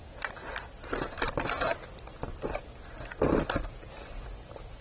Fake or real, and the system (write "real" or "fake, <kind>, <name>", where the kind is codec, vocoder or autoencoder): real